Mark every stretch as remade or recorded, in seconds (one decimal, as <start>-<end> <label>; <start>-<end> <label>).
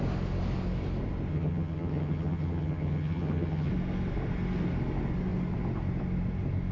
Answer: 0.0-1.3 recorded; 1.3-3.7 remade; 3.7-6.7 recorded